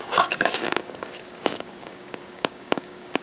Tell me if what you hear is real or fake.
fake